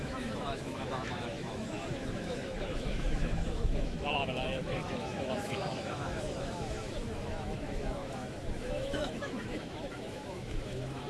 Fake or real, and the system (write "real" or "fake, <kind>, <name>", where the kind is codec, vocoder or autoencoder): fake, autoencoder, DAC-VAE